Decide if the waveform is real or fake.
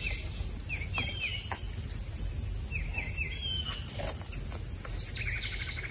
real